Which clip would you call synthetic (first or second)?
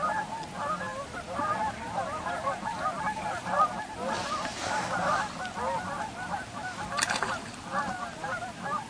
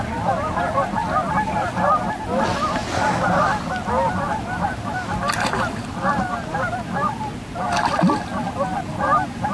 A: first